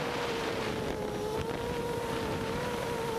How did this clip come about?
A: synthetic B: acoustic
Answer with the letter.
A